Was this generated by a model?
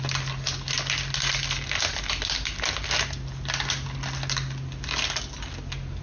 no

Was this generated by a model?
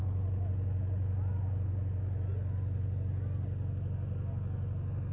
no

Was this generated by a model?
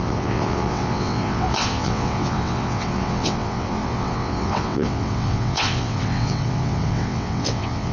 yes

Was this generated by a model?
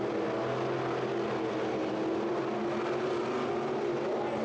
no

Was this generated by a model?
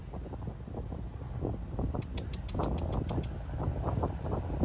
no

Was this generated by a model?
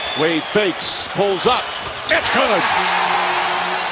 no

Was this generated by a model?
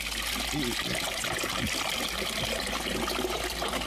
no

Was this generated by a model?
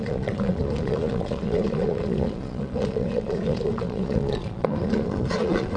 yes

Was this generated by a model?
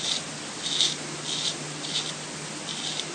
no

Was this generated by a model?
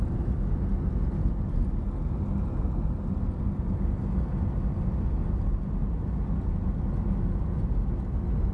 no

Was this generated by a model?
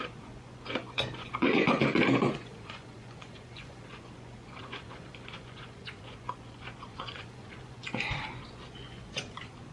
yes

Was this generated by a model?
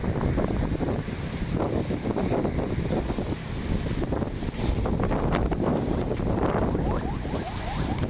no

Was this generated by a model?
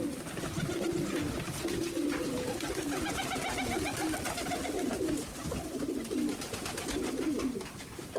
no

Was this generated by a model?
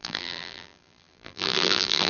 yes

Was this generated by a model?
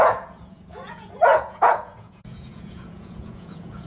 yes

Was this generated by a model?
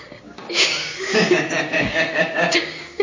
yes